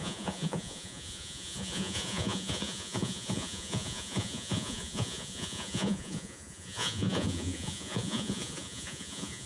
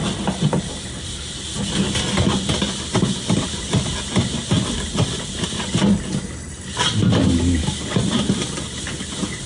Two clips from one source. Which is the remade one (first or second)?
first